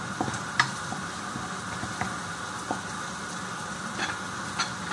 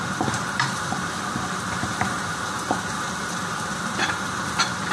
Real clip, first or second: first